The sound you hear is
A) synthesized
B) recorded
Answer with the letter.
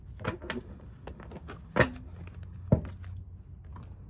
B